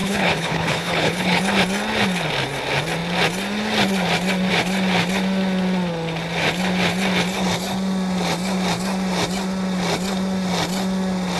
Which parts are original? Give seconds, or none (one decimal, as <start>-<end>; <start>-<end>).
1.4-11.4